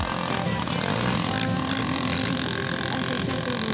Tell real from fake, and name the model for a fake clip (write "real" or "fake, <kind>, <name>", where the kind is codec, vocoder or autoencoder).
real